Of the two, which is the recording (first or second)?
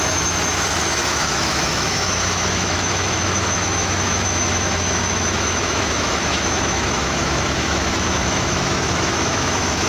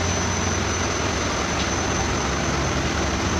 second